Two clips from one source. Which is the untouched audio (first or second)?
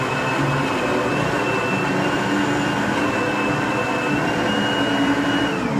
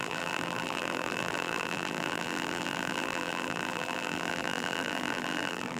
first